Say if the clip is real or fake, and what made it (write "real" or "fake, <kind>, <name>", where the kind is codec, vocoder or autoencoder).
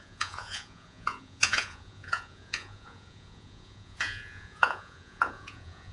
fake, vocoder, Vocos